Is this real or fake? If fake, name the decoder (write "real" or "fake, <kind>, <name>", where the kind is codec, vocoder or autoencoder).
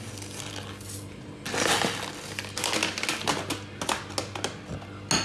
real